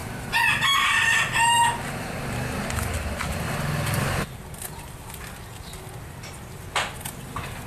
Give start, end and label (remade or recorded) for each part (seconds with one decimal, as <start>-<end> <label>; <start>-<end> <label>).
0.0-7.7 recorded